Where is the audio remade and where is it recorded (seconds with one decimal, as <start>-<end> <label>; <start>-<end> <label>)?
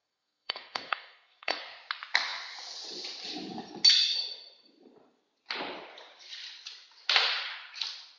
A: 0.0-1.6 remade; 1.6-8.2 recorded